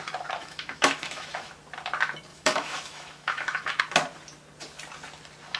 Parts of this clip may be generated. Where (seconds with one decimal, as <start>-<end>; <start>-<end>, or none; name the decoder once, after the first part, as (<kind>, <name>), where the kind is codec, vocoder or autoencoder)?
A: 0.4-1.5 (autoencoder, DAC-VAE); 2.3-3.8